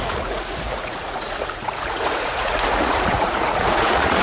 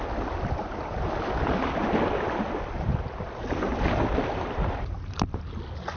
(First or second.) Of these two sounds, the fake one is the first